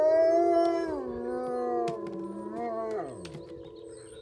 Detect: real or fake real